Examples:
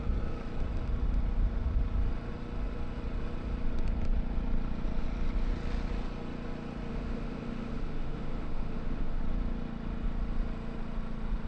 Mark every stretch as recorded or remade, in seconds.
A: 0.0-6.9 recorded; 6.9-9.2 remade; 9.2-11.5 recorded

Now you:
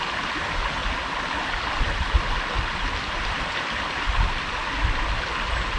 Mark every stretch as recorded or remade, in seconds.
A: 0.0-5.8 recorded

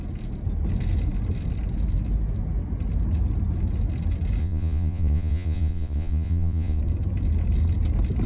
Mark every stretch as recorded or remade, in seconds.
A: 0.0-4.4 recorded; 4.4-6.8 remade; 6.8-8.3 recorded

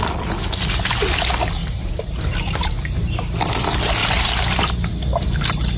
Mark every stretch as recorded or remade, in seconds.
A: 0.0-1.6 recorded; 1.6-3.5 remade; 3.5-4.0 recorded; 4.0-4.7 remade; 4.7-5.8 recorded

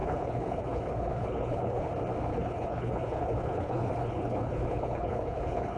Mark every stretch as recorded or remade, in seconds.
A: 0.0-1.9 remade; 1.9-2.3 recorded; 2.3-5.8 remade

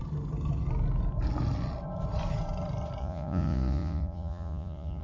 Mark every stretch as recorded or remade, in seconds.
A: 0.0-3.0 recorded; 3.0-5.0 remade

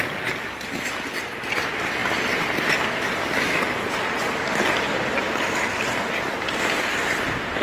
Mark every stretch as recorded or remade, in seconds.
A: 0.0-7.6 recorded